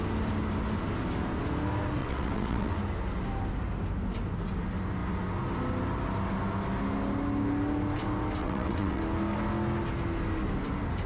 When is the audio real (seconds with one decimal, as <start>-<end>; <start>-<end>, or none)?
0.0-2.0; 2.8-8.4; 9.0-11.1